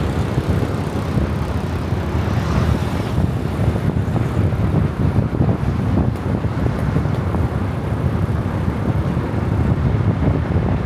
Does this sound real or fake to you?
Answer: fake